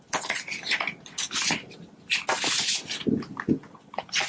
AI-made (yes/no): no